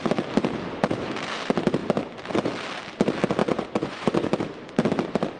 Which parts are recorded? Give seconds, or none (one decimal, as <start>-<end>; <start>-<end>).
0.0-3.4; 4.3-5.4